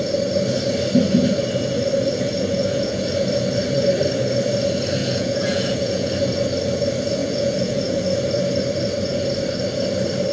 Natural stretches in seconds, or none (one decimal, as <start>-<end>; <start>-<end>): 0.0-2.5; 3.1-5.0; 6.1-7.2; 7.8-10.3